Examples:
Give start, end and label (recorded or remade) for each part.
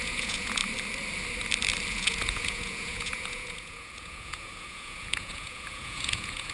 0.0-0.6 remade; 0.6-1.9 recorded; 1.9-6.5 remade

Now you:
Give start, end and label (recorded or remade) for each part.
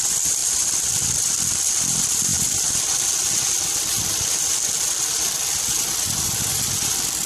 0.0-7.3 remade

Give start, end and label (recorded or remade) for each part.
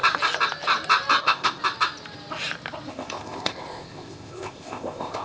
0.0-1.2 recorded; 1.2-1.6 remade; 1.6-2.9 recorded; 2.9-5.2 remade